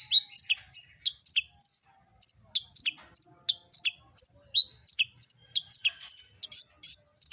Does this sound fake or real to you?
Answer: real